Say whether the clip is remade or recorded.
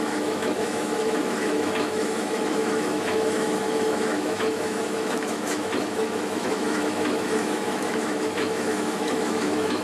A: remade